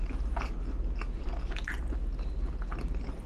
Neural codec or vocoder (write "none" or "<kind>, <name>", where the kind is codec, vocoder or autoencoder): none